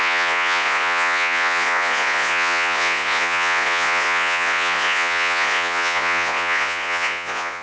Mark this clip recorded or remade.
remade